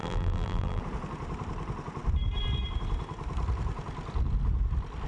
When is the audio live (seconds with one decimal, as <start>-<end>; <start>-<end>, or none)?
0.8-5.1